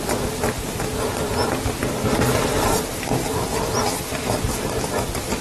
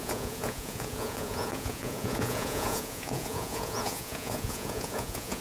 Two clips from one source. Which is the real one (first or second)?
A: first